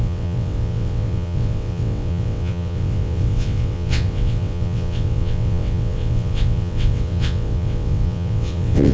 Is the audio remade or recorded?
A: remade